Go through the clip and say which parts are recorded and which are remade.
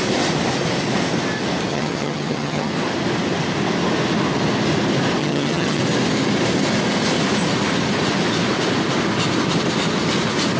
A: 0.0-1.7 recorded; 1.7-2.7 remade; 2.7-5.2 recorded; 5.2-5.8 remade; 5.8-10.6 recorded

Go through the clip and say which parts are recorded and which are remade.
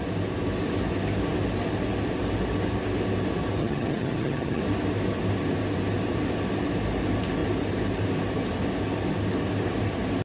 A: 0.0-3.6 recorded; 3.6-4.6 remade; 4.6-10.2 recorded